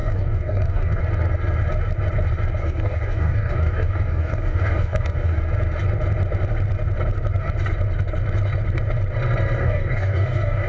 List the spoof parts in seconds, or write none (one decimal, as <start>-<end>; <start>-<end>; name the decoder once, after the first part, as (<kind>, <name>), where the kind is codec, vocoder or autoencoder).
0.0-1.0 (codec, DAC); 2.6-5.4; 9.6-10.7

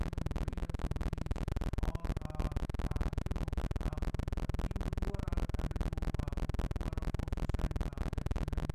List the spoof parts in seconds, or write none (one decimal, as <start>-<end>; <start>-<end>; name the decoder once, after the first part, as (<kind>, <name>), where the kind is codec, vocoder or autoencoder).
0.0-1.5 (autoencoder, DAC-VAE); 2.6-3.6; 8.0-8.7

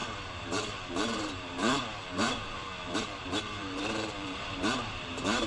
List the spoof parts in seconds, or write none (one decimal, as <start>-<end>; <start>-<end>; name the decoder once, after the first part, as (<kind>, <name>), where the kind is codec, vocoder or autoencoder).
0.0-5.5 (vocoder, BigVGAN v2)

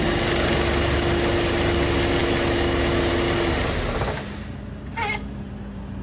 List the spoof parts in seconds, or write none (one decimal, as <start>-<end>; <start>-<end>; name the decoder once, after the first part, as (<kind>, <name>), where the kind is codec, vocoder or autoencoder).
2.2-3.1 (autoencoder, DAC-VAE)

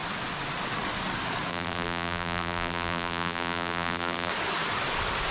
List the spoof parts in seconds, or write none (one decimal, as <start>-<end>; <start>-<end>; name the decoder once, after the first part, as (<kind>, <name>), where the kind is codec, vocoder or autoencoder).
1.5-4.3 (vocoder, BigVGAN v2)